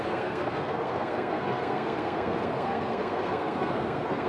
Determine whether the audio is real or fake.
fake